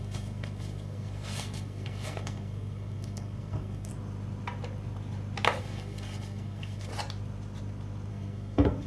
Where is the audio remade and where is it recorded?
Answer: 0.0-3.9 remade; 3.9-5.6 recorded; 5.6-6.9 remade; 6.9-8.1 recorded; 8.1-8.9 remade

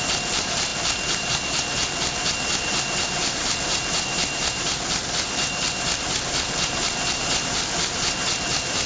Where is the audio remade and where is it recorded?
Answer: 0.0-8.9 remade

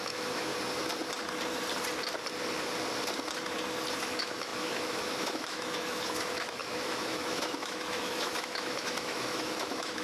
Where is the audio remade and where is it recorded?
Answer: 0.0-0.5 remade; 0.5-4.0 recorded; 4.0-10.0 remade

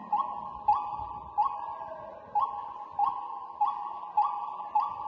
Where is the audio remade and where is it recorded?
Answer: 0.0-5.1 recorded

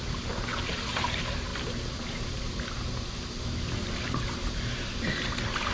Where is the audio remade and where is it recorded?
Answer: 0.0-5.7 recorded

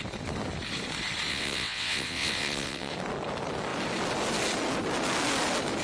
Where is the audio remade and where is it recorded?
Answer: 0.0-1.3 recorded; 1.3-2.9 remade; 2.9-5.8 recorded

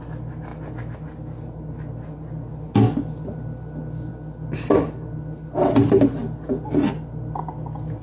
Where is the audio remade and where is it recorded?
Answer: 0.0-8.0 recorded

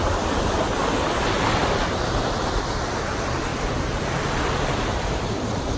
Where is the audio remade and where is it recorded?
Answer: 0.0-0.8 recorded; 0.8-1.6 remade; 1.6-3.1 recorded; 3.1-3.5 remade; 3.5-4.0 recorded; 4.0-5.8 remade